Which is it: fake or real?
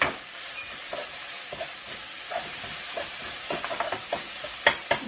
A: real